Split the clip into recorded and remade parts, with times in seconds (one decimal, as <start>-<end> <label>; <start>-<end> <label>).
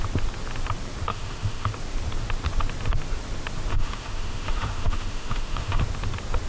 0.0-1.1 recorded; 1.1-1.7 remade; 1.7-3.7 recorded; 3.7-5.8 remade; 5.8-6.5 recorded